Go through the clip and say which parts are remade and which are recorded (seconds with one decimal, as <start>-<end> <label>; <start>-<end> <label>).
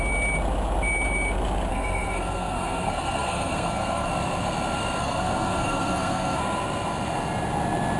0.0-1.7 recorded; 1.7-4.1 remade; 4.1-5.0 recorded; 5.0-6.4 remade; 6.4-8.0 recorded